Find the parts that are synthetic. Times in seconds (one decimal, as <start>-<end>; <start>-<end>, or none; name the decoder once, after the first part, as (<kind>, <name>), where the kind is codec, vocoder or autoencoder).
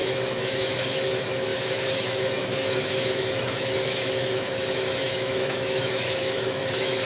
0.0-7.0 (autoencoder, DAC-VAE)